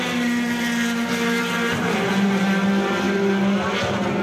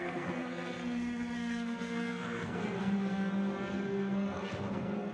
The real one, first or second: first